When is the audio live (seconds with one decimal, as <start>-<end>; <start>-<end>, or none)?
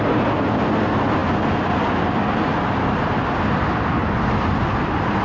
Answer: 0.0-1.2; 2.5-5.2